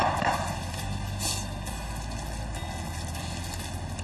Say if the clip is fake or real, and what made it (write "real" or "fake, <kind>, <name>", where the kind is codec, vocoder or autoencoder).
real